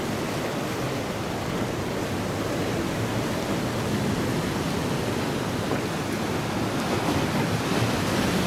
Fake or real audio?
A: real